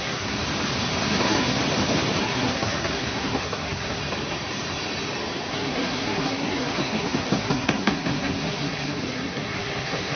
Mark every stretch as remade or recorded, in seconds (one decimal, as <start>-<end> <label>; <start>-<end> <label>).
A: 0.0-0.4 remade; 0.4-1.2 recorded; 1.2-1.6 remade; 1.6-2.2 recorded; 2.2-4.0 remade; 4.0-5.5 recorded; 5.5-10.2 remade